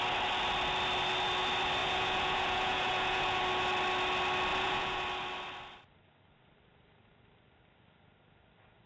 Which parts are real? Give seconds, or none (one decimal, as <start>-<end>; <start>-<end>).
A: 0.0-1.8; 3.4-4.5; 5.0-8.9